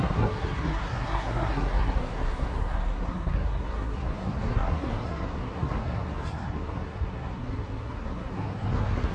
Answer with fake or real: fake